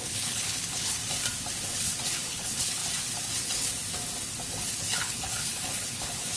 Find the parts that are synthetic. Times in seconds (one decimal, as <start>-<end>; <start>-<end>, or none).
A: 0.0-1.0; 1.7-2.8; 3.4-3.8; 4.7-6.4